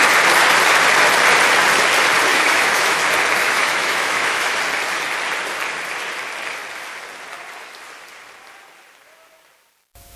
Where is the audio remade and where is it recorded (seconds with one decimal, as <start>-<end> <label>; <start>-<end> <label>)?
0.0-2.3 recorded; 2.3-3.0 remade; 3.0-3.4 recorded; 3.4-4.6 remade; 4.6-10.2 recorded